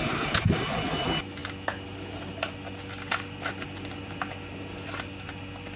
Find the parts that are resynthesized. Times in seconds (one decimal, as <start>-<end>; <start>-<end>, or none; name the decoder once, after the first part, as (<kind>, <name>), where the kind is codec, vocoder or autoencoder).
none